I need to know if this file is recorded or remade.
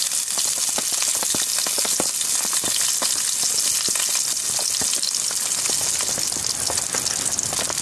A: recorded